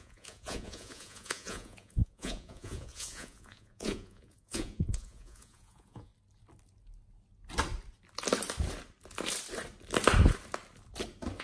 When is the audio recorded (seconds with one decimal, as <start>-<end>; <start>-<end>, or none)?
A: 6.1-11.4